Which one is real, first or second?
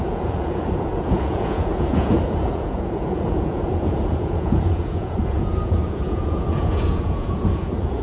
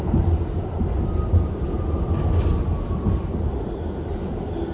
second